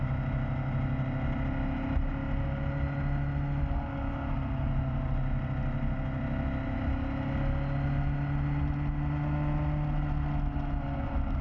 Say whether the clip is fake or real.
real